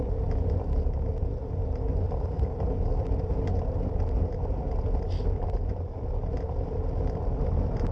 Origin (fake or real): real